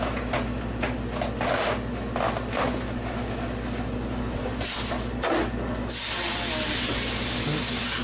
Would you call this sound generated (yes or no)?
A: no